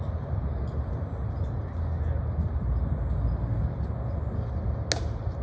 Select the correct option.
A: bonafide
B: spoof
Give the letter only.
A